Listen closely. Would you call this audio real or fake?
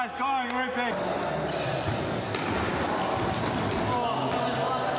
real